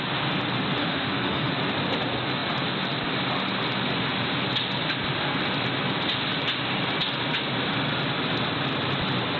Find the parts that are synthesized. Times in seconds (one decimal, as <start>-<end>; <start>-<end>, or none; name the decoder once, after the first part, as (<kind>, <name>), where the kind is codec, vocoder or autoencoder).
0.8-1.5 (autoencoder, DAC-VAE)